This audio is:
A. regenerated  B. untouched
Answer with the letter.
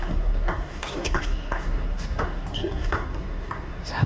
A